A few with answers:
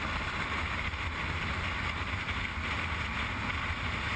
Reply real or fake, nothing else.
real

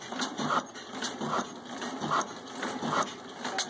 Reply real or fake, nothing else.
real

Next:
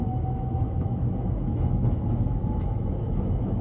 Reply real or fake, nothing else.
fake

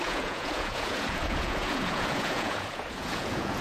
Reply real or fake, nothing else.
fake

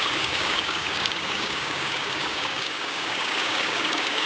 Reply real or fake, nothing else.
fake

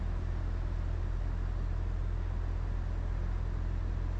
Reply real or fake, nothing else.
real